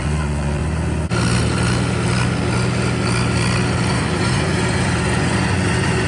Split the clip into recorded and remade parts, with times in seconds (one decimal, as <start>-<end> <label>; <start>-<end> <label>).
0.0-0.6 remade; 0.6-3.9 recorded; 3.9-6.1 remade